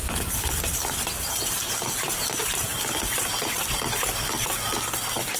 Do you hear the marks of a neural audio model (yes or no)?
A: no